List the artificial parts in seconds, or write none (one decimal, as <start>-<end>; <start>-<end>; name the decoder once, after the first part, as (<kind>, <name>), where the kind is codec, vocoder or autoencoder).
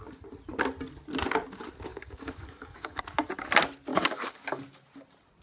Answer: 1.9-3.0 (codec, DAC); 3.9-4.6